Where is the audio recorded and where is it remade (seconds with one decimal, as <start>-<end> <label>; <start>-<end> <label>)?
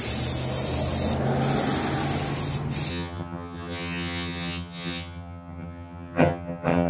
0.0-2.9 recorded; 2.9-6.9 remade